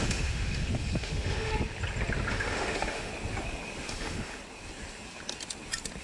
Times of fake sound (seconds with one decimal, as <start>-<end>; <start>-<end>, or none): 0.0-1.5; 2.3-3.1; 3.9-4.4